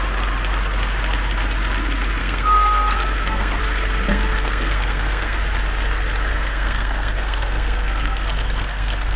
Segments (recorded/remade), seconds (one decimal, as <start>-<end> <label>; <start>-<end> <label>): 0.0-2.2 recorded; 2.2-3.6 remade; 3.6-4.1 recorded; 4.1-5.4 remade; 5.4-6.3 recorded; 6.3-9.2 remade